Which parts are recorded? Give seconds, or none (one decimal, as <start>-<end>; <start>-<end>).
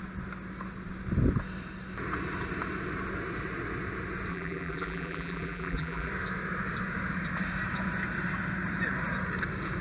0.0-4.3; 6.1-9.8